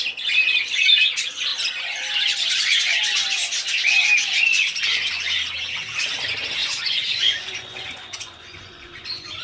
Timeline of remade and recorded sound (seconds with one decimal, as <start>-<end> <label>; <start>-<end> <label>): 0.0-6.6 recorded; 6.6-9.4 remade